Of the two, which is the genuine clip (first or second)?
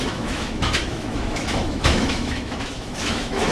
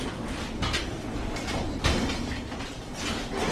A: second